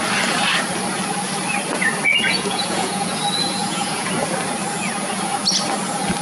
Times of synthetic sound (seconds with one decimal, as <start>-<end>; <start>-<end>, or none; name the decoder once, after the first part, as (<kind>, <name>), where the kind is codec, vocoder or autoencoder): 2.1-3.2 (vocoder, Vocos); 3.6-4.1